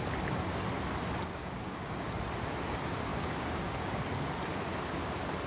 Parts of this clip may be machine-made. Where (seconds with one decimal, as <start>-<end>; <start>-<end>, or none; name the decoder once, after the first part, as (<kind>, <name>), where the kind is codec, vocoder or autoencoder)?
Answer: 1.4-2.2 (codec, DAC); 3.1-3.9